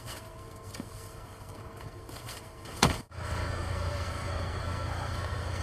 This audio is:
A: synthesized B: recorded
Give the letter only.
A